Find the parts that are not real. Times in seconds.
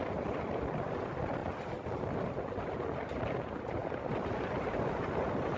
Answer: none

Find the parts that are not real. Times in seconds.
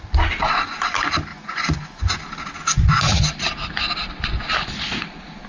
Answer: 1.3-2.2 (vocoder, Vocos)